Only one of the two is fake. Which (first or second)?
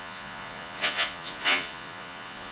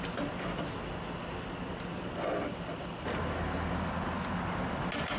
first